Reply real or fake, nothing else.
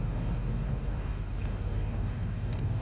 fake